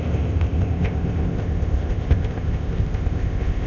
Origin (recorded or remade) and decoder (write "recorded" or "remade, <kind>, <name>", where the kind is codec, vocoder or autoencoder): remade, codec, ZipCodec